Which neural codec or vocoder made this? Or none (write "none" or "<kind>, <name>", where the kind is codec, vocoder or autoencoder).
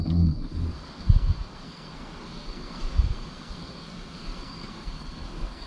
codec, SNAC